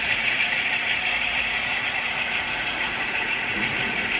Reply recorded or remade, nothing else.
remade